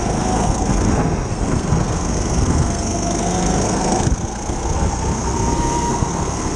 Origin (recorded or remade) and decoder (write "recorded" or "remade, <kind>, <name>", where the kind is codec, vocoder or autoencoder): remade, codec, SNAC